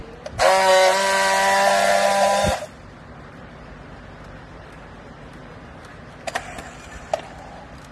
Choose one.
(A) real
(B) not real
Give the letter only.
A